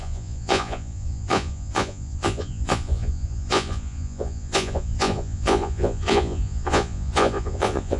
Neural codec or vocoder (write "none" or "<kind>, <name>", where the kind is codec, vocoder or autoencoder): vocoder, Vocos